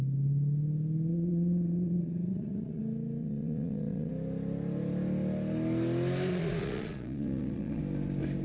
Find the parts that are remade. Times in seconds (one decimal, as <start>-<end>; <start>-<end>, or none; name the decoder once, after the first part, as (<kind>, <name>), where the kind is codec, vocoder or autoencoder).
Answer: 1.1-2.8 (vocoder, Vocos); 3.2-4.1; 6.3-7.8